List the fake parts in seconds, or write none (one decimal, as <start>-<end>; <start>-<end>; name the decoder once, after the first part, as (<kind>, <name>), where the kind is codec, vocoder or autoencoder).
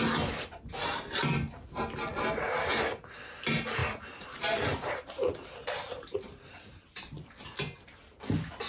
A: 3.8-7.4 (vocoder, BigVGAN v2)